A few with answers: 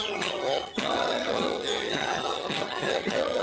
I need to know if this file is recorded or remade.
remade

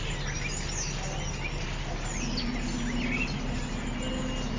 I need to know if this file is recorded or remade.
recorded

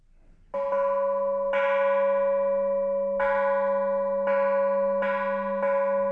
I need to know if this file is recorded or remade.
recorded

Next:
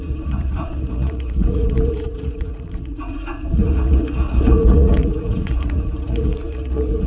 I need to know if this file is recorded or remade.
remade